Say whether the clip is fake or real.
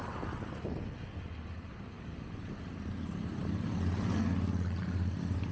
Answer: real